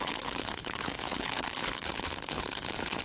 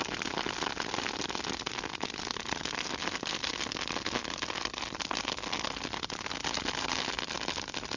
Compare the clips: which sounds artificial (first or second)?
first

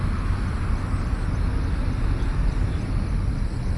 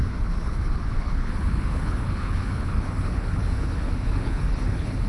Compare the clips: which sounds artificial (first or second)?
second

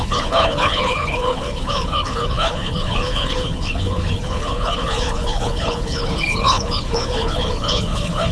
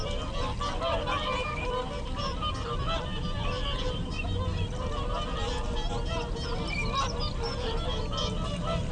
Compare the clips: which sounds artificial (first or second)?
first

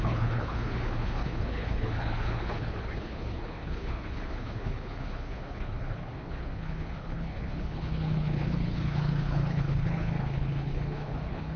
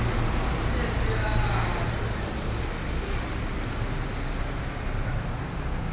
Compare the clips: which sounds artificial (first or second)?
first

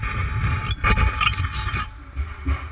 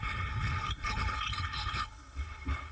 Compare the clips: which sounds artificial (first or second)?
second